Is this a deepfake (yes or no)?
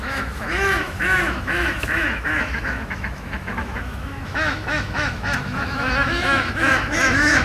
yes